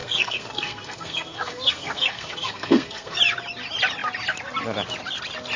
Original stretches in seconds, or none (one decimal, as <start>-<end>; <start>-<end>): 3.2-5.6

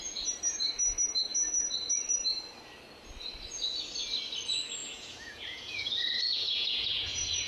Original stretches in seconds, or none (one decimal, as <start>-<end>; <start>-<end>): 0.0-4.8

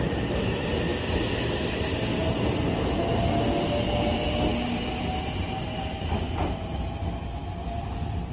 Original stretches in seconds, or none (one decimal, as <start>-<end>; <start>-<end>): 0.0-8.3

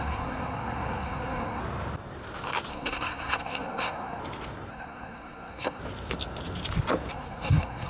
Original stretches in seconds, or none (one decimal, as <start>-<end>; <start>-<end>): 1.6-2.7; 4.2-4.7; 5.8-7.1

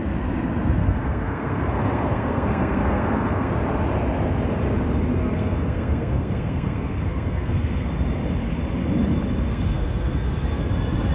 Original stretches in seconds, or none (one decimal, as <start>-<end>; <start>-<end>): 0.0-0.8; 3.5-5.2; 7.9-9.5; 10.6-11.1

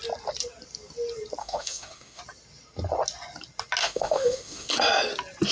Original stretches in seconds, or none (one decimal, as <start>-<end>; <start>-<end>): 0.0-1.4; 2.2-3.8; 4.7-5.5

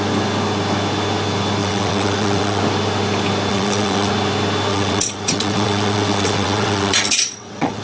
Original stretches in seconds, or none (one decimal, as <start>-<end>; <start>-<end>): 0.0-1.6; 2.6-3.5; 4.1-4.7